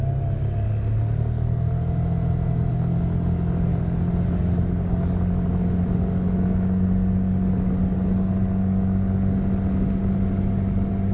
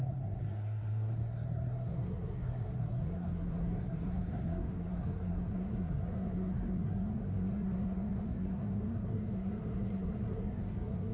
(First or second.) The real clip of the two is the first